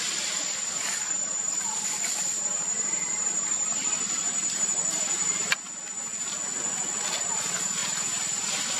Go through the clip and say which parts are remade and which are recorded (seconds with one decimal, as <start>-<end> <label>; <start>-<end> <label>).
0.0-6.1 remade; 6.1-7.1 recorded; 7.1-7.8 remade; 7.8-8.4 recorded; 8.4-8.8 remade